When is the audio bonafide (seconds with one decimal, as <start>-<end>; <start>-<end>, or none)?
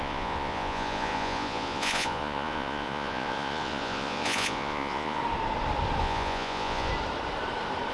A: 5.2-6.0; 6.9-7.9